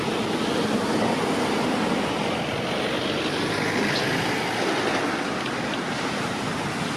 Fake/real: real